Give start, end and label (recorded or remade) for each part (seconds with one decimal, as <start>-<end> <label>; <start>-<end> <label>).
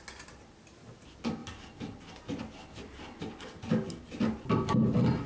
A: 0.0-5.3 recorded